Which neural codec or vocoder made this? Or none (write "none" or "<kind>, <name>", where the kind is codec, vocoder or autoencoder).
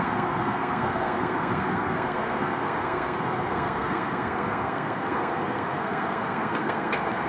codec, SNAC